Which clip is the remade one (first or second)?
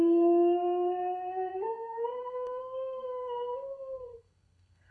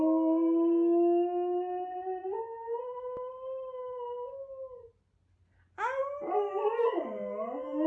first